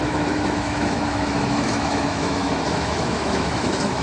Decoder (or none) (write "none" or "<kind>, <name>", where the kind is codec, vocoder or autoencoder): autoencoder, DAC-VAE